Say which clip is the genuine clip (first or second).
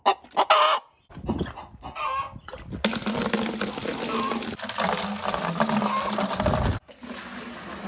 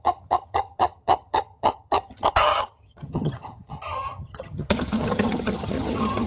first